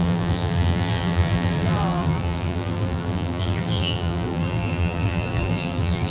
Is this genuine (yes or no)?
no